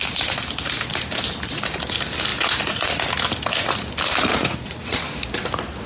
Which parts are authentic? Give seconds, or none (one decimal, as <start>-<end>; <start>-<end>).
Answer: 0.0-4.3; 5.0-5.9